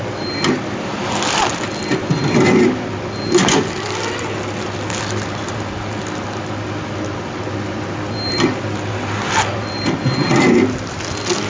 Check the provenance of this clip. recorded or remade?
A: recorded